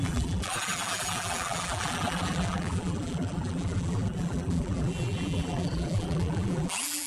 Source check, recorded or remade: remade